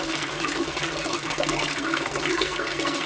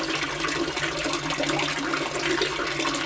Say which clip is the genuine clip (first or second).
second